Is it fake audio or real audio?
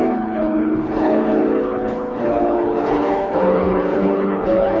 fake